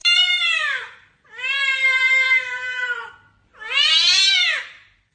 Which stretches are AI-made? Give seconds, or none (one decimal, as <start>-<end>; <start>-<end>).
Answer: 0.0-3.1